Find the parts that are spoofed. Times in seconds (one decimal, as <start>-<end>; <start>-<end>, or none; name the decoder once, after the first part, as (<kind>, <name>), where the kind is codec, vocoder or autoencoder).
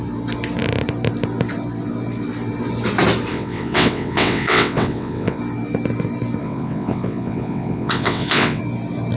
3.3-5.4 (vocoder, WaveNeXt); 6.4-8.6